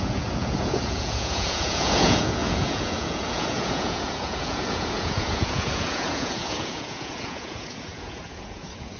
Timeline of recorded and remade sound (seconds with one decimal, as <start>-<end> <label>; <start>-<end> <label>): 0.0-9.0 remade